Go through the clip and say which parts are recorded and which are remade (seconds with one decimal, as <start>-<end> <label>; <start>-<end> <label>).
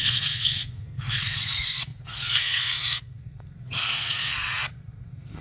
0.0-5.4 remade